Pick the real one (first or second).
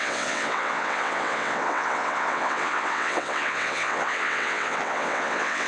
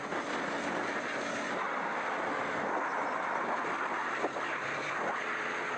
second